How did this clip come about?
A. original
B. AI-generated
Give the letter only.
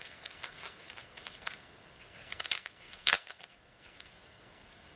B